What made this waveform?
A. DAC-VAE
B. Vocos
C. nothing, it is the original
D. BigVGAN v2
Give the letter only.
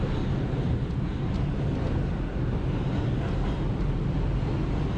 C